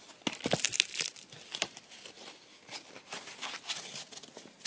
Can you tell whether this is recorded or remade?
recorded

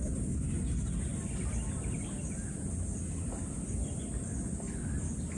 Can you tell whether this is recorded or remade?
recorded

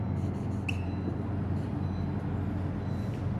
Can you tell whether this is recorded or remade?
recorded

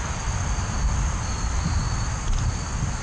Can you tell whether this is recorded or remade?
recorded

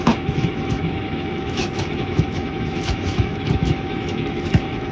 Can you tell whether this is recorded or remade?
remade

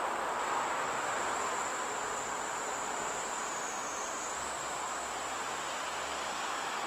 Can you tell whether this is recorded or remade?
recorded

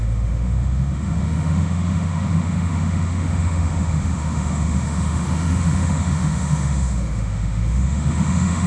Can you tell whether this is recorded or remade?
remade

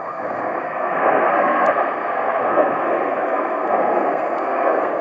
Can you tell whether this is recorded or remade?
remade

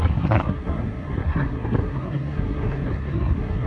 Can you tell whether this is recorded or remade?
remade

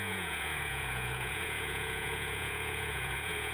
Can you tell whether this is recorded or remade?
remade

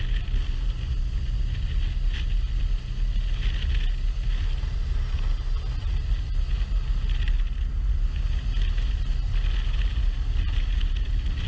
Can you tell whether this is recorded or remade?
recorded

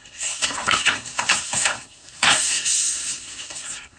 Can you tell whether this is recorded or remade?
remade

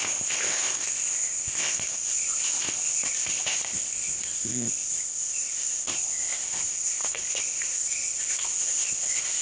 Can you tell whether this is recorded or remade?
remade